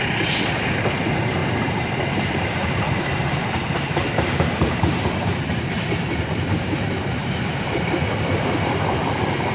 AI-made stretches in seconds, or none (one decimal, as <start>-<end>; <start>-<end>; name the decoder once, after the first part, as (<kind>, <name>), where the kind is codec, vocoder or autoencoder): 2.6-6.8 (vocoder, BigVGAN v2); 7.2-9.5